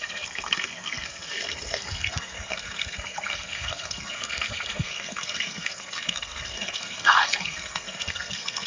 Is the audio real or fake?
fake